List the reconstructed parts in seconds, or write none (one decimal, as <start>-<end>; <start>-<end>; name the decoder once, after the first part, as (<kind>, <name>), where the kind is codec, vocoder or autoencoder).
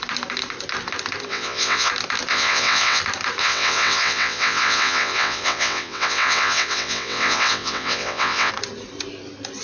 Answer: 1.3-1.9 (vocoder, WaveNeXt); 2.3-3.0; 3.4-8.5